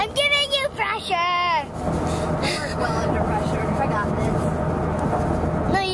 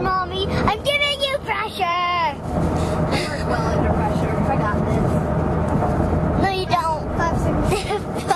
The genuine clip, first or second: first